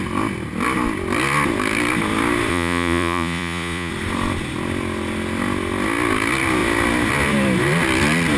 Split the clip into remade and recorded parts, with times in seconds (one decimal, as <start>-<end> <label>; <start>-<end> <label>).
0.0-2.5 recorded; 2.5-3.9 remade; 3.9-8.4 recorded